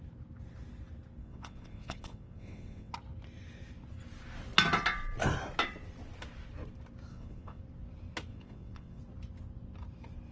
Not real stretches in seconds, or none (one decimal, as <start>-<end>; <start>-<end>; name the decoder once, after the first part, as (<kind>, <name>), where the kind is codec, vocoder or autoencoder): 1.2-2.9 (vocoder, WaveNeXt); 7.1-7.6; 8.3-9.0